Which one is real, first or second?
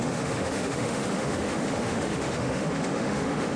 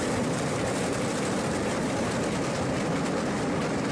second